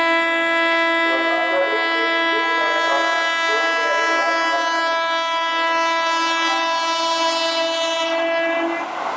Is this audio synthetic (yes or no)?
no